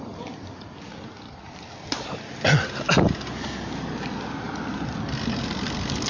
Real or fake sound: real